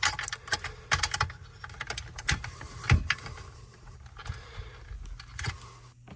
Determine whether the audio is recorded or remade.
recorded